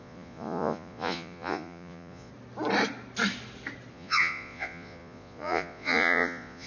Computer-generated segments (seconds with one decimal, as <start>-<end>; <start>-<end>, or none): 0.0-2.3; 3.9-6.7

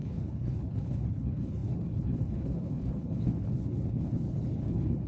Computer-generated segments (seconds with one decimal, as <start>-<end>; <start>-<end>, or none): 0.0-5.1

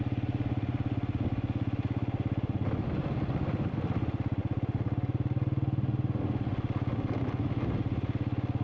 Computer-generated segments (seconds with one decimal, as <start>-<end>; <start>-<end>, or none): none

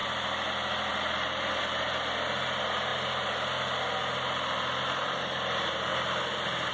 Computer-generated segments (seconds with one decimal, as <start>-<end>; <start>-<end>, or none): 0.0-0.5; 0.9-1.6

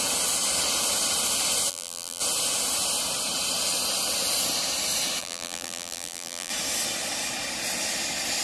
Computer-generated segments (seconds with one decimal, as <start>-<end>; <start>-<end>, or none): 1.7-2.2; 5.2-6.5

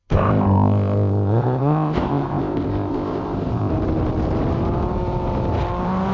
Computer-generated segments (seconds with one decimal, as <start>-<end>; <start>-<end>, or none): 0.0-3.7

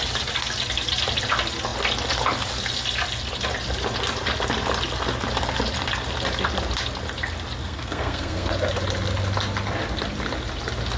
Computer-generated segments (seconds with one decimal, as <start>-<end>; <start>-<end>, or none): 7.6-8.5

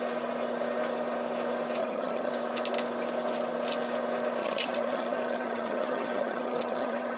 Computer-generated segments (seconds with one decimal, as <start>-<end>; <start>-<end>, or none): 1.8-2.3; 4.4-7.2